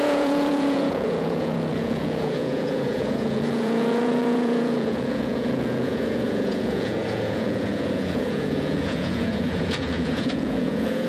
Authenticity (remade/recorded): remade